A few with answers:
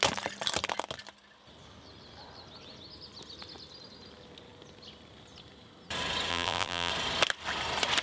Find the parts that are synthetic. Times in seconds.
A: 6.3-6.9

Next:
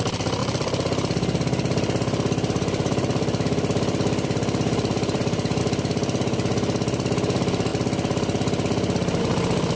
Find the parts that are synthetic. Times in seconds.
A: 0.4-5.6; 7.7-9.2